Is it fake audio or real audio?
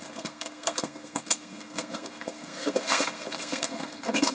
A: fake